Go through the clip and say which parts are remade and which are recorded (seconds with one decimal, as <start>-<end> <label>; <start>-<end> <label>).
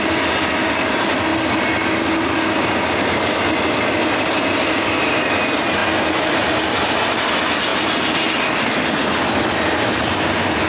0.0-10.7 recorded